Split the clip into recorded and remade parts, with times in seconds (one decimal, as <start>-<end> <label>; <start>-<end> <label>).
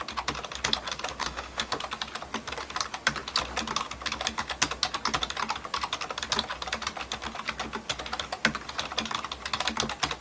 0.0-1.2 recorded; 1.2-1.7 remade; 1.7-10.2 recorded